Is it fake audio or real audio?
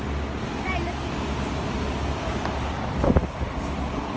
real